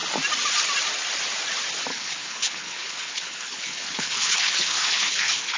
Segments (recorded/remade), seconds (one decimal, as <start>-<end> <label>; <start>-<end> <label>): 0.0-1.9 recorded; 1.9-5.6 remade